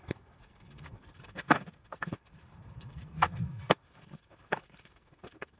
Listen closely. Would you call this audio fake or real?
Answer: fake